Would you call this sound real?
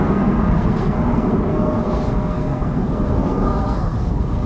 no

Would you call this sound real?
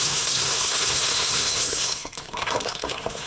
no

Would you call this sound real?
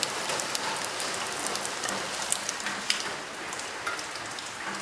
yes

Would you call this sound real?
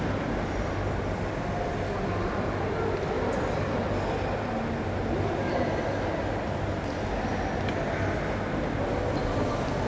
yes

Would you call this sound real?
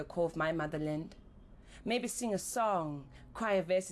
yes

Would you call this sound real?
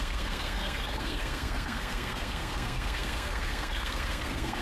no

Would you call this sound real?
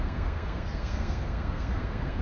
no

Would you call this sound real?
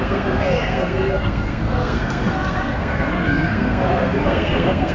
no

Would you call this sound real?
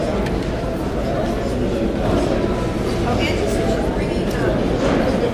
yes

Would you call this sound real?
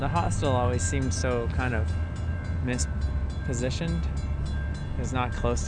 yes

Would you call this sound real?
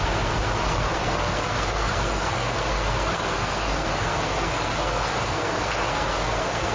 no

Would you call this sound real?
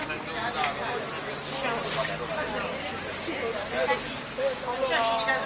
yes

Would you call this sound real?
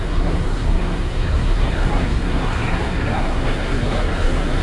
no